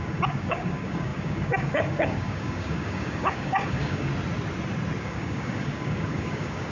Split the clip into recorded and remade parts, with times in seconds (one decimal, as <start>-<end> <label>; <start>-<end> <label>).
0.0-4.1 remade; 4.1-5.0 recorded; 5.0-6.7 remade